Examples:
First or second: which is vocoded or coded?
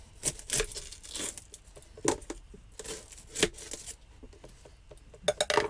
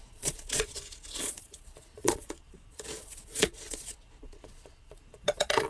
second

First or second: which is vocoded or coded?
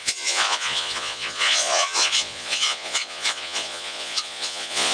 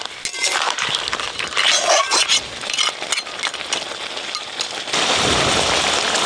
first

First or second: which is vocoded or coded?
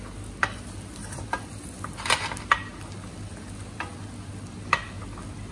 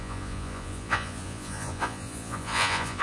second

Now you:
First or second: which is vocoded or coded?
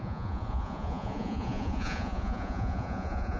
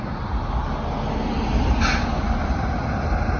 first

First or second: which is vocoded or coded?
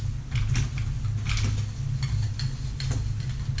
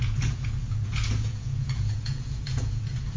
second